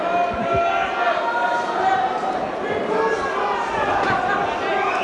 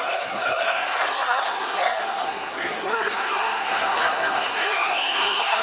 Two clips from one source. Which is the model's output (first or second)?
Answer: second